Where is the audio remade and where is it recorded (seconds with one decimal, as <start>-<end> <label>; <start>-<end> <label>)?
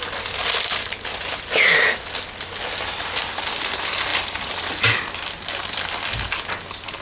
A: 0.0-7.0 recorded